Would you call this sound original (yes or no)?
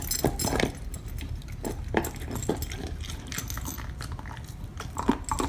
yes